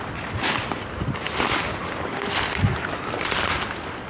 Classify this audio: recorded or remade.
recorded